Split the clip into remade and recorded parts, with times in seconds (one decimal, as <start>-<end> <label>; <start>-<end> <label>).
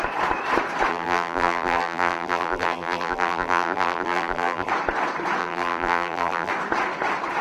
0.0-0.9 recorded; 0.9-4.7 remade; 4.7-5.4 recorded; 5.4-6.5 remade; 6.5-7.4 recorded